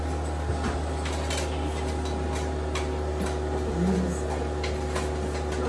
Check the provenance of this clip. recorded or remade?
recorded